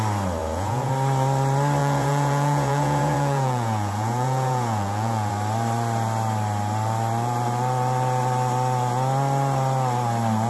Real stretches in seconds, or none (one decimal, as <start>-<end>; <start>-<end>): 0.0-0.4; 0.9-1.8; 5.3-10.5